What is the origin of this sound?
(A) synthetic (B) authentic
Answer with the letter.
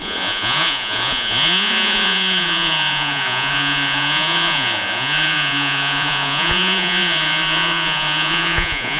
A